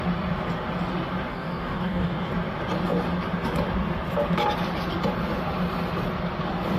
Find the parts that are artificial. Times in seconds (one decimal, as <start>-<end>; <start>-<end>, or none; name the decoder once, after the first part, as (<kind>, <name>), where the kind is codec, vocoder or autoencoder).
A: 1.3-2.3 (codec, DAC)